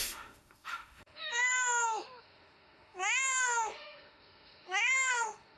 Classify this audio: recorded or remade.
remade